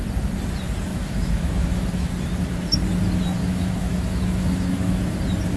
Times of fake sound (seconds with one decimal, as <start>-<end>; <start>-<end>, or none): 0.9-2.1; 3.4-5.0